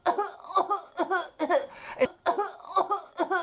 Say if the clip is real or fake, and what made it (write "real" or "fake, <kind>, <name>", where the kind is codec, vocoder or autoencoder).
fake, vocoder, Vocos